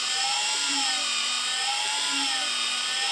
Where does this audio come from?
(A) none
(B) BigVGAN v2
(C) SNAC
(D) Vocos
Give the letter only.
B